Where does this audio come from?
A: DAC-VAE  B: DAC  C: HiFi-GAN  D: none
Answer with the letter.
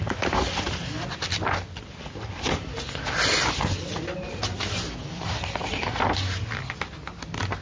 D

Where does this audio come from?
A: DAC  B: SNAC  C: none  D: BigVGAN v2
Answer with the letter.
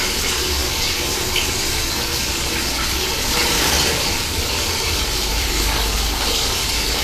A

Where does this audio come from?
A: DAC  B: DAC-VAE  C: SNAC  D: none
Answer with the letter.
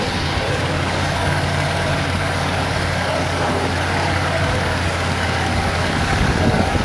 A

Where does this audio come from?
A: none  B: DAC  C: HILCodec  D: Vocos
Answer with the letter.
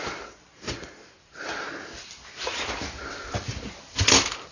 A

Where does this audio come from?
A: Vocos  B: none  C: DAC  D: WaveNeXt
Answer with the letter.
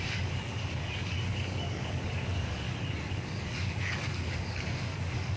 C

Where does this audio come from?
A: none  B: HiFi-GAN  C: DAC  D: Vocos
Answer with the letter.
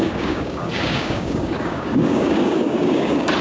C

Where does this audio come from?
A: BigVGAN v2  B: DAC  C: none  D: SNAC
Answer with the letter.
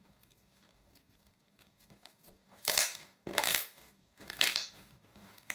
B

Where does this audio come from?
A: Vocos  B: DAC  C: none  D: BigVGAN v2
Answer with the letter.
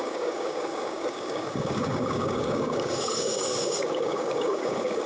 B